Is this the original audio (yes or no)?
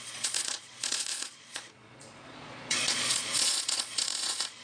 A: no